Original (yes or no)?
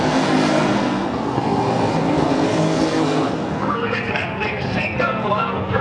no